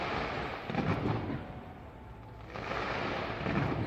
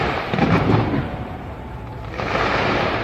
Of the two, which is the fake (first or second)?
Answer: second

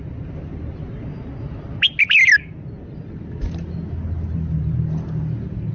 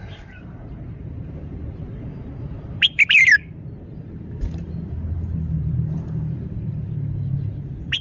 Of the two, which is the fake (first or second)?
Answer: second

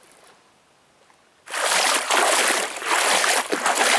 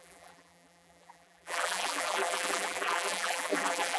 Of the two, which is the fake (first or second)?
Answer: second